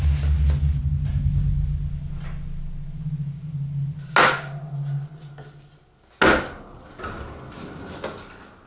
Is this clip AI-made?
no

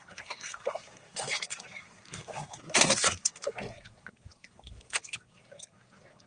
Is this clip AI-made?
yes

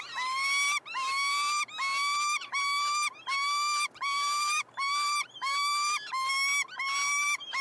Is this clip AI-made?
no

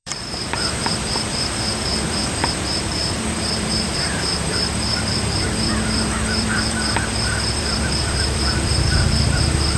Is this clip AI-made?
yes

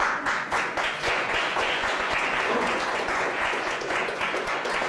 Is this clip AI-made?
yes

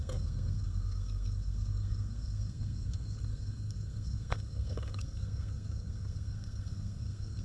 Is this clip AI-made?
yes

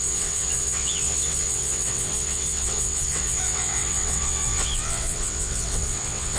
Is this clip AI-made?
yes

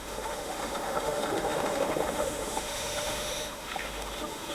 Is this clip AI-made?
yes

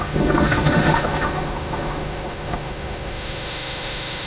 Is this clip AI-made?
yes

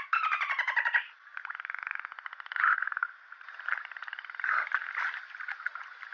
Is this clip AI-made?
no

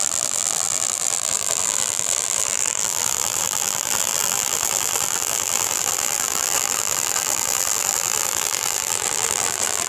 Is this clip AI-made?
yes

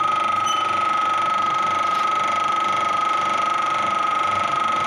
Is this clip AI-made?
yes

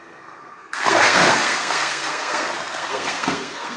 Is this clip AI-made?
yes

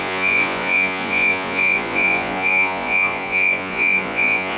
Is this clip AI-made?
yes